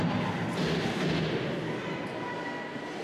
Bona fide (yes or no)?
yes